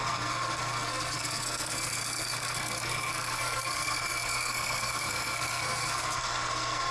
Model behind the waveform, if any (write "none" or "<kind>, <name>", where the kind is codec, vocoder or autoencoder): codec, SNAC